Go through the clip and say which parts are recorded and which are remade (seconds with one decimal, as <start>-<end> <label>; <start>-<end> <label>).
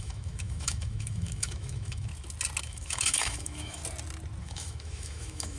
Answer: 0.0-2.1 remade; 2.1-2.6 recorded; 2.6-3.8 remade; 3.8-4.4 recorded; 4.4-5.6 remade